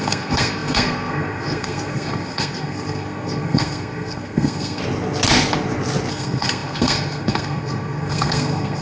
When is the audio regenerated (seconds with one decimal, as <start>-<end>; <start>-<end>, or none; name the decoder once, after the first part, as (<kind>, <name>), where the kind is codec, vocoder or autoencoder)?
0.0-4.8 (codec, SNAC); 6.1-8.8